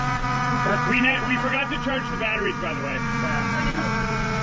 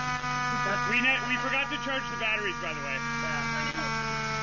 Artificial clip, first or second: first